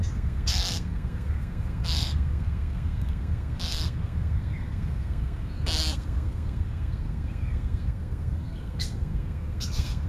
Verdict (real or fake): fake